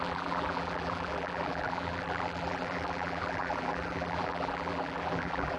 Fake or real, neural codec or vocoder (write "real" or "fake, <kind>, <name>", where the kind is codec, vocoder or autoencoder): fake, vocoder, BigVGAN v2